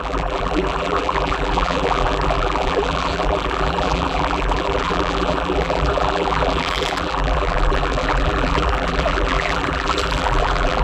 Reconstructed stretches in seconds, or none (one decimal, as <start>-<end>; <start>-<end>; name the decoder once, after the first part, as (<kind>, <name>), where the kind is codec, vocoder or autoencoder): 0.0-10.8 (vocoder, BigVGAN v2)